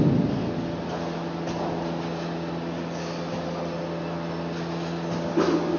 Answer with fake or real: real